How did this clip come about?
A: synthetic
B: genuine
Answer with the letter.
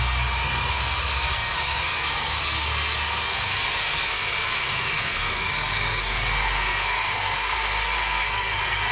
A